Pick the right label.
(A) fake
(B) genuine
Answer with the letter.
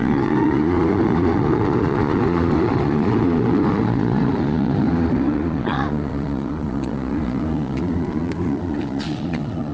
A